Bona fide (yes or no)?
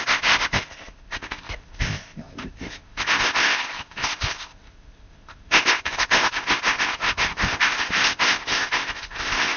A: no